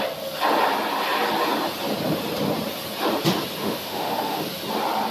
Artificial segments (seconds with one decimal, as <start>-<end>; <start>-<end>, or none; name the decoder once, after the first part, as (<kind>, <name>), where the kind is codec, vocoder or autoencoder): 3.6-4.4 (autoencoder, DAC-VAE)